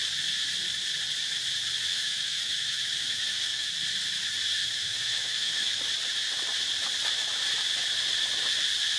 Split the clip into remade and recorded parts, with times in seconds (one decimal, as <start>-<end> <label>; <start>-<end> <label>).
0.0-1.9 recorded; 1.9-3.7 remade; 3.7-4.6 recorded; 4.6-5.8 remade; 5.8-9.0 recorded